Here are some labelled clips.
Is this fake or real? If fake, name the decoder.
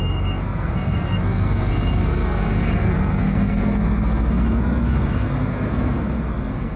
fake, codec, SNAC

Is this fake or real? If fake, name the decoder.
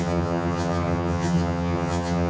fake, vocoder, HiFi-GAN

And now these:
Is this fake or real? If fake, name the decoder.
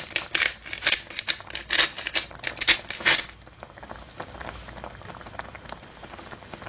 real